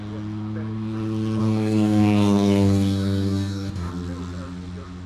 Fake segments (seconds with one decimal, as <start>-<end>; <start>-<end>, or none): 1.4-3.9